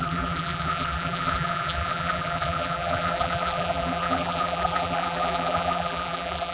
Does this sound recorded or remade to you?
remade